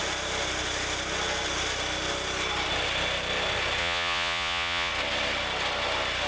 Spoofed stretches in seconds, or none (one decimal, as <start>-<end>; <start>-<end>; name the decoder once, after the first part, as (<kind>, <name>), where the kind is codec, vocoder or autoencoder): 3.8-4.9 (vocoder, Vocos)